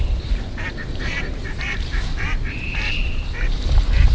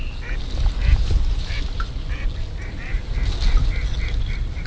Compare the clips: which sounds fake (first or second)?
first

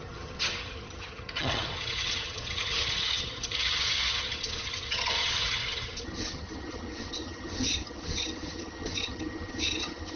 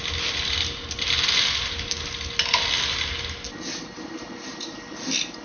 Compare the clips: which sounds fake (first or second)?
first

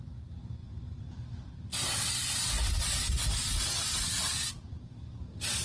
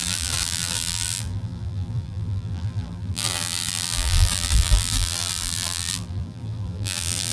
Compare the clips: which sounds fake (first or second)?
second